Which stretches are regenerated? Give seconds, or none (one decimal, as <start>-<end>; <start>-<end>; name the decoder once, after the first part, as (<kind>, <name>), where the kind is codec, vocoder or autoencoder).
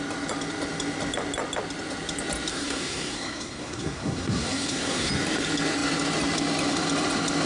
2.5-5.1 (codec, SNAC)